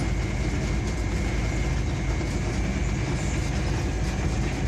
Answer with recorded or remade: recorded